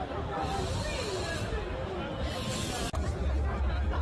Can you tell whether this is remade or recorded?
recorded